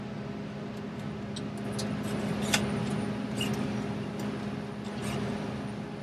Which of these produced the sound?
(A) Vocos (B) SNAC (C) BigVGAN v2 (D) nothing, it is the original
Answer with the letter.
D